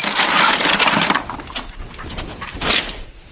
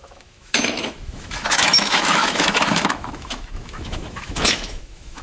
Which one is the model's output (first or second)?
second